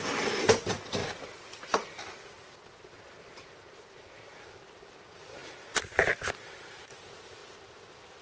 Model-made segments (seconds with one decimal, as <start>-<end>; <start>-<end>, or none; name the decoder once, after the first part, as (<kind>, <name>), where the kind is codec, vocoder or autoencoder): 1.0-4.5 (vocoder, BigVGAN v2)